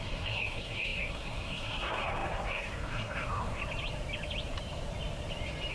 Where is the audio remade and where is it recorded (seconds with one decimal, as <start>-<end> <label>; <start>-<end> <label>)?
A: 0.0-3.6 remade; 3.6-5.7 recorded